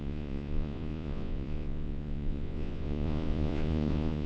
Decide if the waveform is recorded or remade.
remade